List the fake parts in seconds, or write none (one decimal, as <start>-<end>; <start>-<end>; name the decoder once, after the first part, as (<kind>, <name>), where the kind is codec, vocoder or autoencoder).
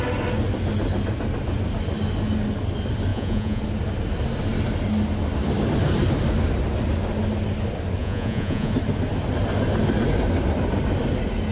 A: 3.1-3.6 (vocoder, Vocos); 8.0-8.7